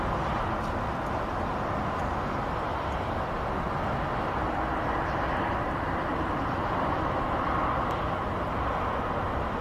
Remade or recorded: recorded